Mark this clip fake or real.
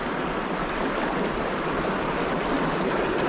real